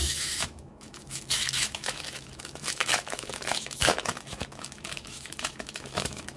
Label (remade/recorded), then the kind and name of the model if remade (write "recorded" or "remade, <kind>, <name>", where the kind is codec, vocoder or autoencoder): remade, autoencoder, DAC-VAE